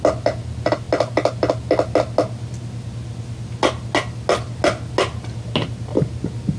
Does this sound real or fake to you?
real